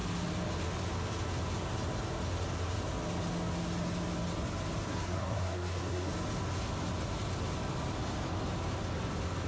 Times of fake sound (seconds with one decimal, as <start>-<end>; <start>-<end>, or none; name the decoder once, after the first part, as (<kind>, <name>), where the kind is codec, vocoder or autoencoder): 4.9-6.1 (codec, SNAC)